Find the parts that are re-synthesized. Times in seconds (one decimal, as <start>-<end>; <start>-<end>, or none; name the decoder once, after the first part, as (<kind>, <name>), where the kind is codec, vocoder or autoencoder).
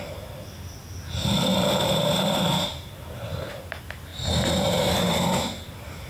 1.5-3.6 (vocoder, BigVGAN v2); 4.1-4.9